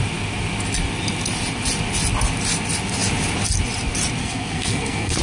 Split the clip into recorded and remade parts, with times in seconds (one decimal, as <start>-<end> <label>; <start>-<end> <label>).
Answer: 0.0-4.2 recorded; 4.2-5.2 remade